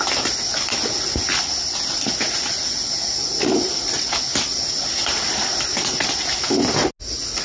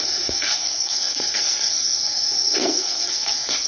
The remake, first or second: second